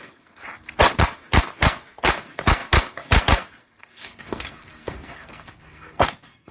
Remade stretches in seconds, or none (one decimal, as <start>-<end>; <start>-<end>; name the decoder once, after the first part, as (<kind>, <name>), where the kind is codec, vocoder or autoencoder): 0.0-0.4 (codec, SNAC); 1.0-6.5